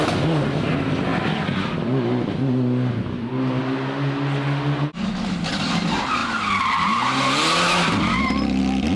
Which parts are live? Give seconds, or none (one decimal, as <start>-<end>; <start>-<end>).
0.0-9.0